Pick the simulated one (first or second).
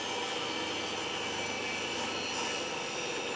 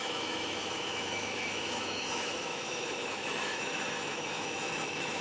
second